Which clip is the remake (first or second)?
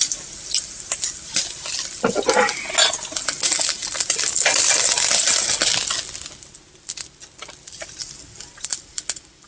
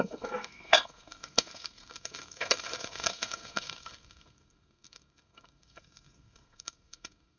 second